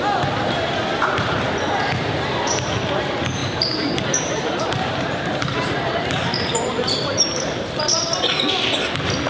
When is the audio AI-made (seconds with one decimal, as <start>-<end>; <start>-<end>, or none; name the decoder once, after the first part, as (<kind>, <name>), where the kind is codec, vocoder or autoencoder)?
3.4-8.1 (vocoder, BigVGAN v2)